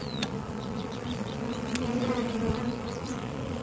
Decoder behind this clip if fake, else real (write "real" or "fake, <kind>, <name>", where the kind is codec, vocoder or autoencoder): fake, vocoder, Vocos